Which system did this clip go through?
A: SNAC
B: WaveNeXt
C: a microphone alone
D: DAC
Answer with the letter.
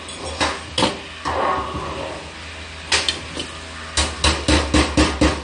C